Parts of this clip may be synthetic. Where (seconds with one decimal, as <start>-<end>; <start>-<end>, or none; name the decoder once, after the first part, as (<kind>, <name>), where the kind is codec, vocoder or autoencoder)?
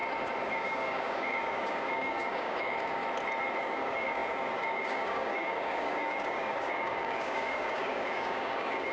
0.5-3.0 (codec, DAC); 3.6-8.9